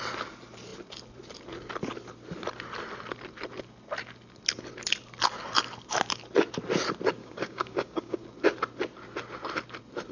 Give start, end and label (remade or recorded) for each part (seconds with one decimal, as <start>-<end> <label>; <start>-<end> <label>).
0.0-7.2 recorded; 7.2-8.2 remade; 8.2-10.1 recorded